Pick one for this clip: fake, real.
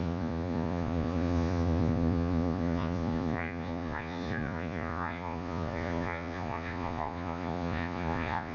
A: fake